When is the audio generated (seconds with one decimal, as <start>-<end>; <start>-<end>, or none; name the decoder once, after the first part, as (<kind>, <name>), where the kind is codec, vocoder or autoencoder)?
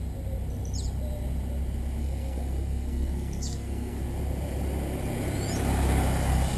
2.0-4.0 (codec, SNAC)